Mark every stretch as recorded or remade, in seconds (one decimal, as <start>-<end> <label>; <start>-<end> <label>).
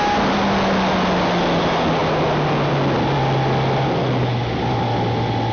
0.0-5.5 recorded